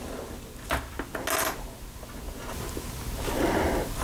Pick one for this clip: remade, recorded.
recorded